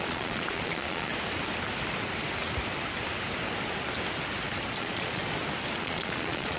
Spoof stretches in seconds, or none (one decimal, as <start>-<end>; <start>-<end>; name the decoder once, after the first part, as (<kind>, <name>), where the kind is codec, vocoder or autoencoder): 0.0-1.1 (vocoder, Vocos); 4.8-5.2; 5.8-6.6